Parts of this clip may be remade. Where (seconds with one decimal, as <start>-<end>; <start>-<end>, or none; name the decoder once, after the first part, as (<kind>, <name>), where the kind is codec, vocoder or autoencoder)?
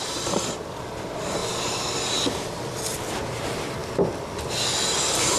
0.0-5.4 (vocoder, BigVGAN v2)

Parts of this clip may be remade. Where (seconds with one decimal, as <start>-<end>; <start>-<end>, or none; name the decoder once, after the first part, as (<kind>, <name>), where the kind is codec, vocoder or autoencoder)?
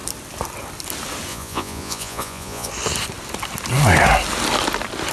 1.3-2.7 (vocoder, Vocos)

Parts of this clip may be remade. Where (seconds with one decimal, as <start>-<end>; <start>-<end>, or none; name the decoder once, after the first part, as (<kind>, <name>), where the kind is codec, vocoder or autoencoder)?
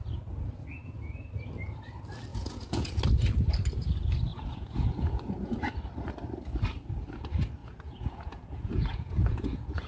0.8-1.3 (vocoder, Vocos); 2.3-3.0; 4.3-5.5; 7.6-9.9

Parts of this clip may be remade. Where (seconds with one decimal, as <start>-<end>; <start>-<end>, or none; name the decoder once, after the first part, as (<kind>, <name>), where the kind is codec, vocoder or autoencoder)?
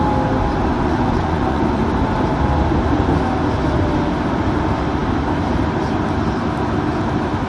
0.7-1.8 (vocoder, Vocos)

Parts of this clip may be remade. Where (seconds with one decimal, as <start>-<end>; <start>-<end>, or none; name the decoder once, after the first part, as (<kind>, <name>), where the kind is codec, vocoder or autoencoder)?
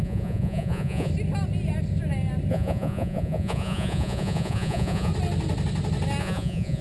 0.0-1.1 (vocoder, Vocos); 2.5-5.1; 6.2-6.8